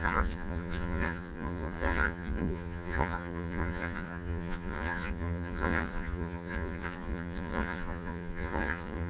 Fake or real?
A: fake